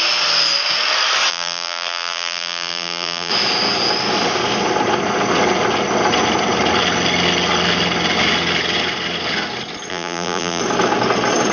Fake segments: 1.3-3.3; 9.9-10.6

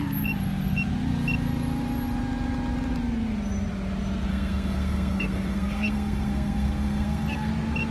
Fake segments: 4.3-7.5

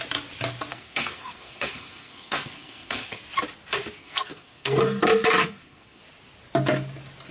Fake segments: 0.7-3.2; 4.0-5.0; 5.4-6.0

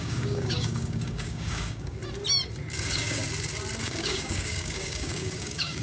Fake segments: 0.0-2.0; 2.7-3.2; 3.8-5.8

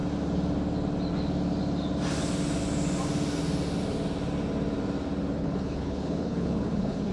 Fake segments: 5.4-7.1

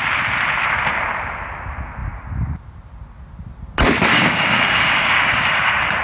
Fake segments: 4.1-6.0

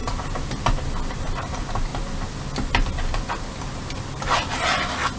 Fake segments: 1.1-1.9